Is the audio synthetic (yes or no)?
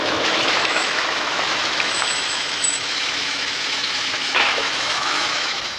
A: yes